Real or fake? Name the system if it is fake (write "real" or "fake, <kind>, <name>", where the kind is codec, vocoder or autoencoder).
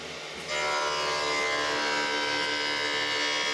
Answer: real